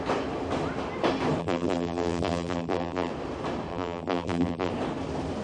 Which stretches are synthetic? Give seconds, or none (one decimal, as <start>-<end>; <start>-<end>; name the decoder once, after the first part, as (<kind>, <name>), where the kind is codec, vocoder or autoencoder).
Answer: 1.4-3.1 (vocoder, BigVGAN v2); 3.7-4.7